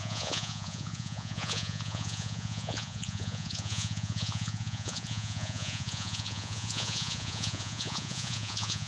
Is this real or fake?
fake